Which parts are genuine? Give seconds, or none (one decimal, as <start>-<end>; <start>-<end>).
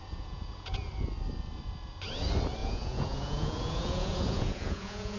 0.9-2.6